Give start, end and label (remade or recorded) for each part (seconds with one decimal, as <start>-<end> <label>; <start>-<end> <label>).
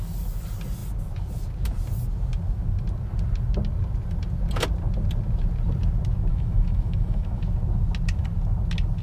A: 0.0-6.3 recorded; 6.3-7.4 remade; 7.4-9.0 recorded